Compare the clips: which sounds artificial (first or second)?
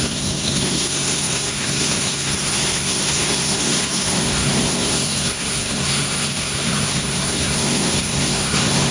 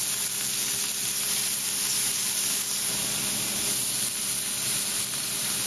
first